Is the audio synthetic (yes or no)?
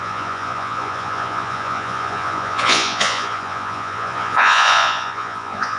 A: yes